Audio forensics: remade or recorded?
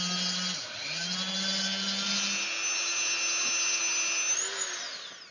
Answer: recorded